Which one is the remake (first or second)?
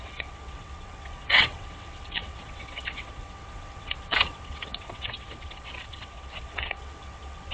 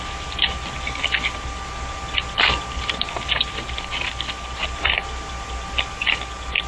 first